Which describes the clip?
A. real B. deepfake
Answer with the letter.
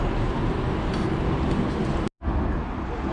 A